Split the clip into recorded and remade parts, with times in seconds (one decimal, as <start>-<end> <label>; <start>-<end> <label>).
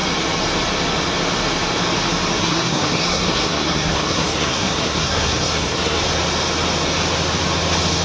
0.0-2.4 recorded; 2.4-6.0 remade; 6.0-8.0 recorded